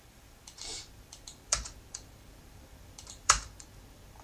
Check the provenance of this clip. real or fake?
fake